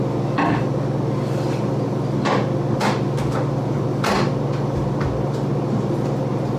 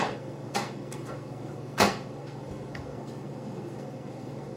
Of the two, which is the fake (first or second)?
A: second